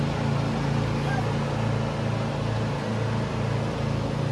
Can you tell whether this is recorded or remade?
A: recorded